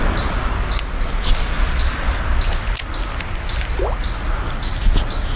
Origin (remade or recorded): recorded